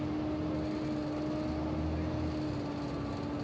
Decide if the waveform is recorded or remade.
recorded